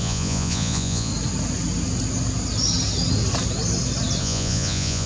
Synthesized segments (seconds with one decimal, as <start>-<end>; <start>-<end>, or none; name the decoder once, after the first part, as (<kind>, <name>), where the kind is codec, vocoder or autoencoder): 0.0-1.1 (vocoder, Vocos); 4.2-5.1